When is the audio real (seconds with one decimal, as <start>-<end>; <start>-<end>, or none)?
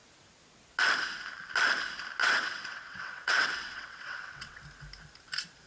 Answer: 0.0-2.2; 4.6-5.7